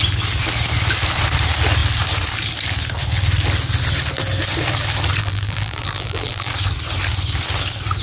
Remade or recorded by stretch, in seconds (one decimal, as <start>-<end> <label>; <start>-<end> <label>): 0.0-5.2 recorded; 5.2-6.5 remade; 6.5-8.0 recorded